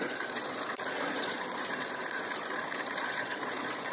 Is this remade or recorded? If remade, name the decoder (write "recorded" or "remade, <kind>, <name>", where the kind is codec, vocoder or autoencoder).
remade, vocoder, Vocos